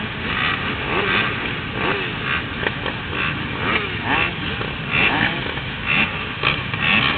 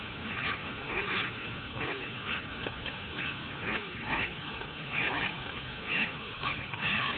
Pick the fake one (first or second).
second